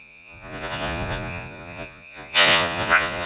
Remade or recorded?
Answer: remade